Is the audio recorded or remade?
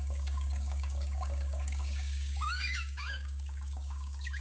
remade